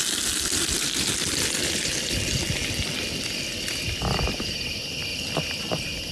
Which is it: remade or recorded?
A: recorded